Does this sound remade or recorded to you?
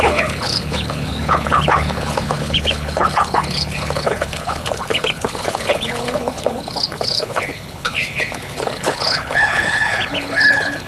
remade